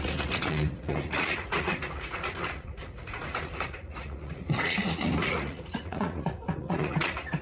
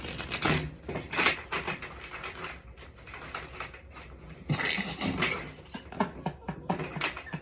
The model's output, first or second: first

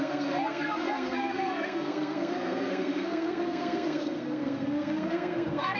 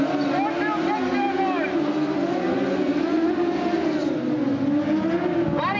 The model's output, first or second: first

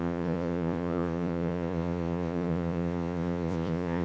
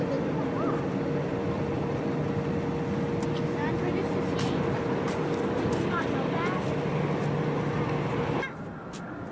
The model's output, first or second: first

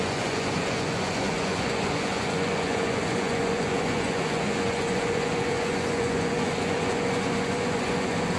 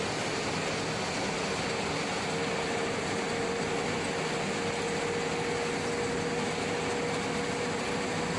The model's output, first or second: first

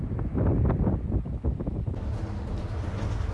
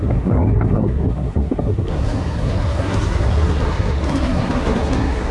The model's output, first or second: second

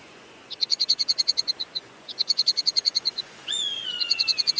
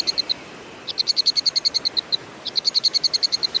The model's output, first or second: first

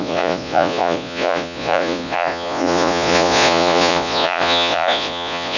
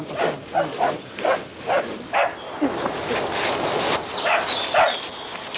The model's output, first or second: first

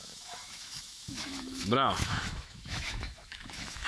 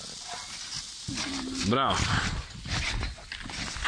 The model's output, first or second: first